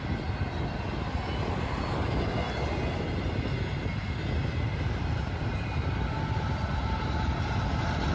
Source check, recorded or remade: recorded